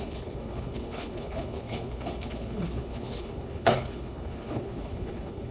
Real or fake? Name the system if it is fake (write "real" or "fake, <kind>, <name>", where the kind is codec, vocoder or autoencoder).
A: fake, codec, HILCodec